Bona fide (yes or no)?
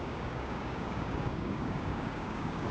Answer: no